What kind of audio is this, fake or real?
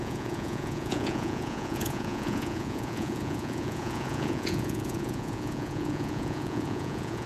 fake